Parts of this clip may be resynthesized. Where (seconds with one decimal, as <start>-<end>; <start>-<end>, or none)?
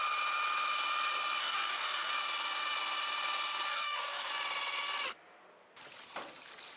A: 1.4-2.1; 3.7-4.3